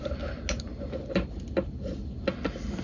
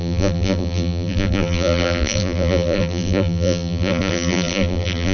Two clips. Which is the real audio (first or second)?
first